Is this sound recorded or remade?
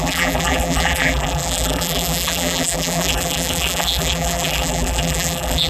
remade